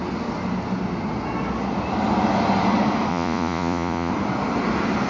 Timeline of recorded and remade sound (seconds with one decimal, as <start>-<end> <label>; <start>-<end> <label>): 0.0-3.1 recorded; 3.1-4.1 remade; 4.1-5.1 recorded